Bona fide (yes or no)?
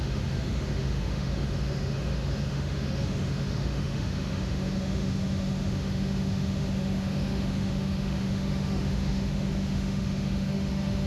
no